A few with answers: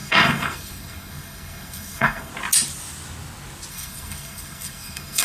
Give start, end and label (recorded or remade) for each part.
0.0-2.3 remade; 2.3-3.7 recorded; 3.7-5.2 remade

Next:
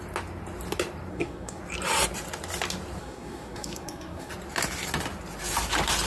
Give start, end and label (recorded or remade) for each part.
0.0-1.1 recorded; 1.1-1.6 remade; 1.6-3.0 recorded; 3.0-4.3 remade; 4.3-6.1 recorded

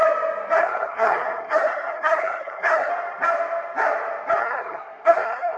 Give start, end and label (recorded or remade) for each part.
0.0-0.6 recorded; 0.6-2.9 remade; 2.9-4.4 recorded; 4.4-5.6 remade

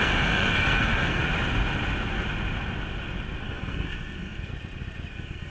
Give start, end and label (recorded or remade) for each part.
0.0-1.2 remade; 1.2-3.4 recorded; 3.4-4.5 remade; 4.5-5.1 recorded; 5.1-5.5 remade

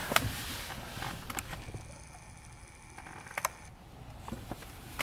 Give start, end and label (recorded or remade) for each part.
0.0-5.0 recorded

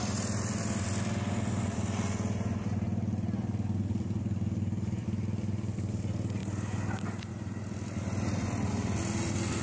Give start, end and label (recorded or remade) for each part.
0.0-9.6 recorded